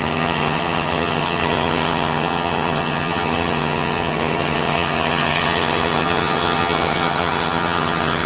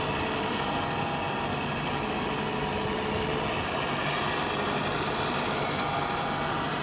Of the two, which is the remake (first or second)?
first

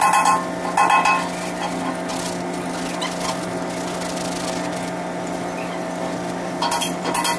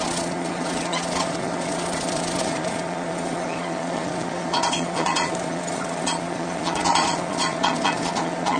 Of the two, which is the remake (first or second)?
second